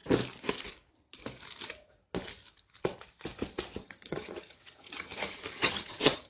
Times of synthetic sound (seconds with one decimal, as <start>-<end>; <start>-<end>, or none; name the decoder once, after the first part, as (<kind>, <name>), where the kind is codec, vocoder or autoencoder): 3.8-6.3 (vocoder, HiFi-GAN)